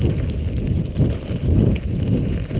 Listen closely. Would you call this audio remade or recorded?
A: recorded